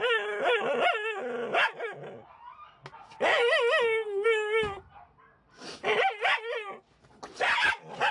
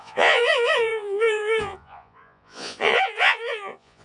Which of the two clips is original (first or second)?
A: first